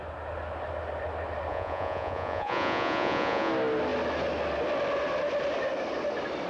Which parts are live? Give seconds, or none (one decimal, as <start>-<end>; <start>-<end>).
0.0-1.5; 3.5-6.5